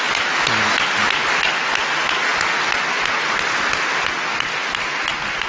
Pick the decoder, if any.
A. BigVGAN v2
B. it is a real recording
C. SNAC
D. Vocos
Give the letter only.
B